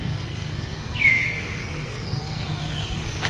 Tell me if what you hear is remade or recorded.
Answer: remade